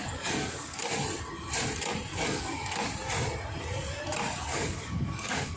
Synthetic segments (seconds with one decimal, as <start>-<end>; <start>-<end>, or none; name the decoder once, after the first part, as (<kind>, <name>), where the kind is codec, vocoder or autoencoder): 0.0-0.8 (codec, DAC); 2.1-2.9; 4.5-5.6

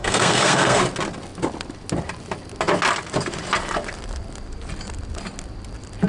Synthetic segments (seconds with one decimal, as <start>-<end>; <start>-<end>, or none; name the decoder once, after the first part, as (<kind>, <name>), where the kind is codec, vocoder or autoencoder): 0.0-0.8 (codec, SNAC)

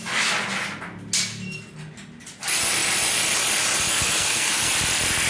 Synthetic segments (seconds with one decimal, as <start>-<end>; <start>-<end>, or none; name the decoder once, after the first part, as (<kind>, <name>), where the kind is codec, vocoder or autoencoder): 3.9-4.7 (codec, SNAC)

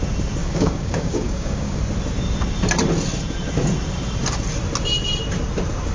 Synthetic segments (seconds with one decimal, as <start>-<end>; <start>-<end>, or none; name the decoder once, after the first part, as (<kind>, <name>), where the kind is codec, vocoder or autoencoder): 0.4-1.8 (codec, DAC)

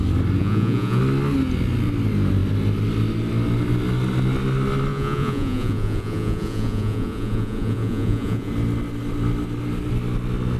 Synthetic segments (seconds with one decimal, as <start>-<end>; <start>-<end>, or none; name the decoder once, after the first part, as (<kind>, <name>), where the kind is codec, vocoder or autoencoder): 0.4-1.0 (vocoder, Vocos); 4.9-8.5

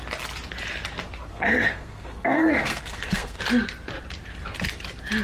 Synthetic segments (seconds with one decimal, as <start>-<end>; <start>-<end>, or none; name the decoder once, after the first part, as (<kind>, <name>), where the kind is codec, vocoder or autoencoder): 1.3-3.4 (codec, SNAC)

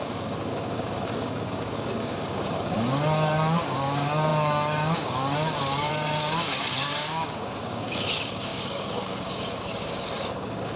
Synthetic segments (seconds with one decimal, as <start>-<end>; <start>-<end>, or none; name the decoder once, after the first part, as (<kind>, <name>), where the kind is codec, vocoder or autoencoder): 0.0-10.8 (codec, DAC)

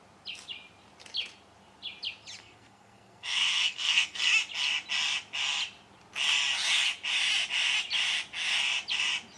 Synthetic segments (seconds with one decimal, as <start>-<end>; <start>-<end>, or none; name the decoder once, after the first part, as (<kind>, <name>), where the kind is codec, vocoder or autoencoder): 2.4-4.2 (codec, SNAC)